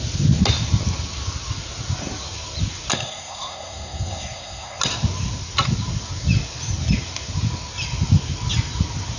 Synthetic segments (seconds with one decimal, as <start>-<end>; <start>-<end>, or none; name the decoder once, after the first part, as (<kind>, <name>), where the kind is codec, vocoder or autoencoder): 2.9-4.8 (codec, SNAC)